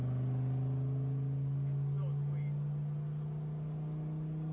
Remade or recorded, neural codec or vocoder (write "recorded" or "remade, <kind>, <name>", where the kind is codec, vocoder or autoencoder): recorded